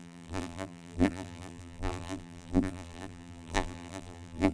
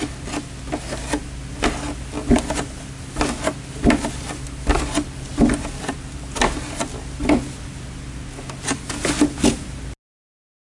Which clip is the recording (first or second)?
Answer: second